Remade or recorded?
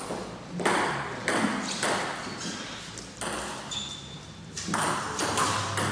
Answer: recorded